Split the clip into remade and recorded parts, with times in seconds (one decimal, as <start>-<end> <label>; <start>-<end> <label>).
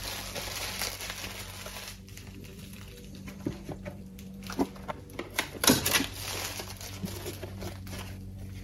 0.0-2.5 recorded; 2.5-4.5 remade; 4.5-8.6 recorded